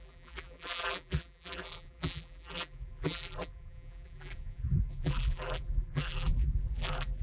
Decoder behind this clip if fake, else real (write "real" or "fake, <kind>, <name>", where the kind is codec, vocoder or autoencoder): fake, vocoder, BigVGAN v2